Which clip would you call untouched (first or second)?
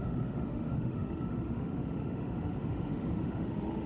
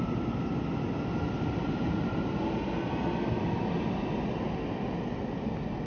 second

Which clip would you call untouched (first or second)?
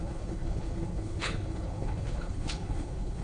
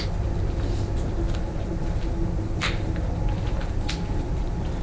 second